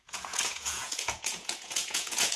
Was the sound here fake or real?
fake